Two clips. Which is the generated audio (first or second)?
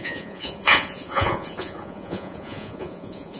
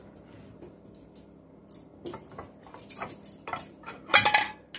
first